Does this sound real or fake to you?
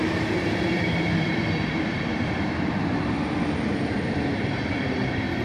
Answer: fake